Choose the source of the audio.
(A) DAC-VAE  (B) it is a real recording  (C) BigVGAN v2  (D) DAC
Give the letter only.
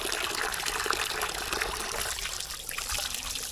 B